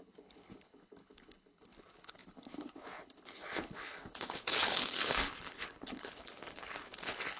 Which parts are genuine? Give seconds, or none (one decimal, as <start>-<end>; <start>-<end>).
none